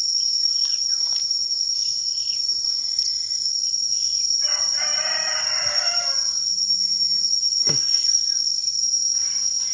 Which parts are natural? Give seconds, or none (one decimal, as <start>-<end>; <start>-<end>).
0.0-2.8; 3.5-7.6; 8.8-9.7